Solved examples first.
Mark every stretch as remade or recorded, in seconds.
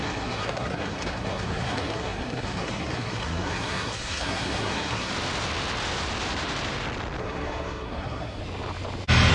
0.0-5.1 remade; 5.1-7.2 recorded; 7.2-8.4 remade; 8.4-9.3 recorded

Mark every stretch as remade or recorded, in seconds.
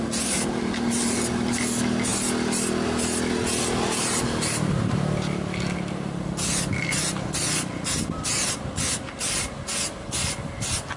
0.0-11.0 recorded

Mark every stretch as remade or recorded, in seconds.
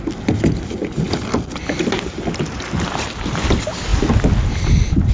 0.0-5.1 recorded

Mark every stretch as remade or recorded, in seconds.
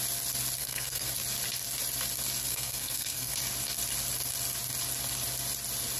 0.0-0.6 recorded; 0.6-1.1 remade; 1.1-2.5 recorded; 2.5-3.3 remade; 3.3-6.0 recorded